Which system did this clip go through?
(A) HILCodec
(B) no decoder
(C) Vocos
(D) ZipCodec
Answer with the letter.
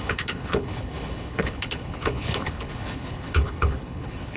A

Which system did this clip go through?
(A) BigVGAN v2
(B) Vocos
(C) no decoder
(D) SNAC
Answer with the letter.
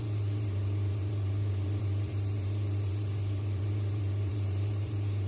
A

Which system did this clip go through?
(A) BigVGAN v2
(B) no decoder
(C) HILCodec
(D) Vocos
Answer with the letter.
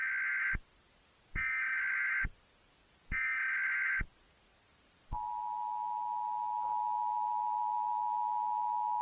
B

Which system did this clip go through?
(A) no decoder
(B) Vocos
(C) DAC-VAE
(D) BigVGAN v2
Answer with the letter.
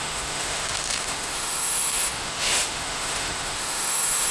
C